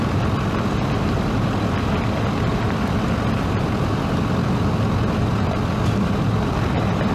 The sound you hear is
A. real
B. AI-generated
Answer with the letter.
A